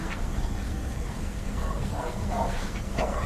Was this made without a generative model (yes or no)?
no